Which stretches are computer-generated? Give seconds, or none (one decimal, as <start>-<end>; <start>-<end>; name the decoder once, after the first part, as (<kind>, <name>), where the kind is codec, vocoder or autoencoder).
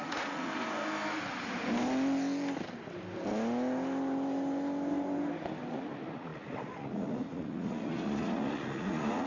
0.0-0.5 (vocoder, Vocos); 5.7-9.3